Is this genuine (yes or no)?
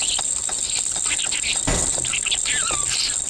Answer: yes